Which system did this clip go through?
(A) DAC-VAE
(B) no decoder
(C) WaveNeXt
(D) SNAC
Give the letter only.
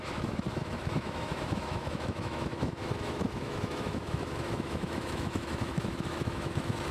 A